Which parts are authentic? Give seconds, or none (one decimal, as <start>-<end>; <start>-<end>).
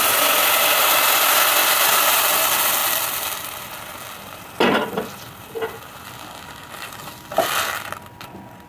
0.0-1.6; 2.3-2.8; 3.6-8.7